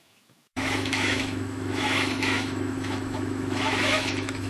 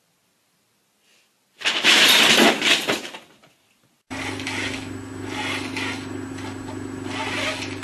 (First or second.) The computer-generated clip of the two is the first